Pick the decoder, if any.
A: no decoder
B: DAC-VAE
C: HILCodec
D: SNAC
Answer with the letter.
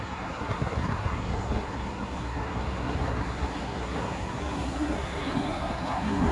D